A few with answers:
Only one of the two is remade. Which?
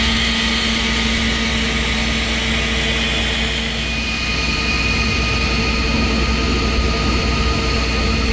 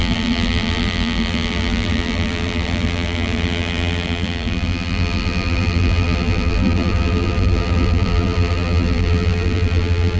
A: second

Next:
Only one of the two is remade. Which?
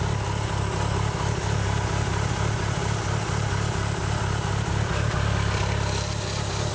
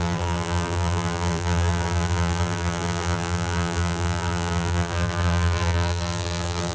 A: second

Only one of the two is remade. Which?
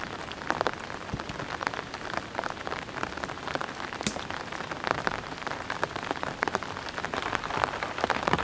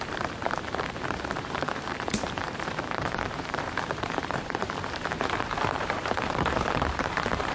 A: second